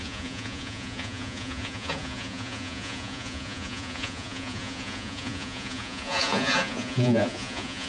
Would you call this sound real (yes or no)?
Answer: no